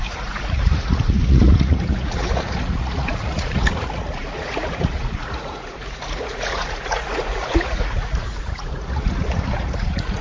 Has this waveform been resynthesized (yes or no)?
yes